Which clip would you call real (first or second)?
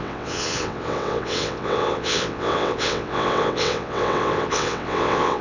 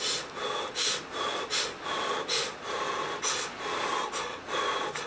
second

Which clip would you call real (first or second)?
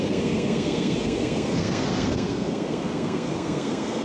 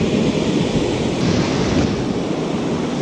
second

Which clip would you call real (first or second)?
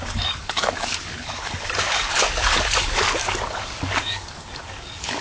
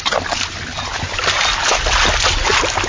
second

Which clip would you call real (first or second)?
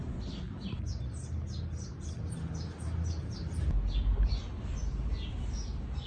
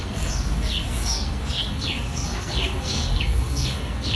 first